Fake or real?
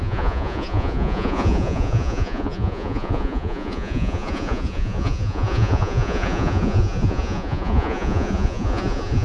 fake